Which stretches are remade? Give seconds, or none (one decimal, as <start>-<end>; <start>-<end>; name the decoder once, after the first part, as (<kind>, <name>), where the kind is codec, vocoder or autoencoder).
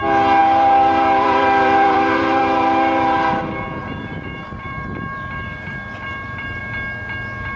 0.4-2.4 (vocoder, BigVGAN v2); 3.8-6.6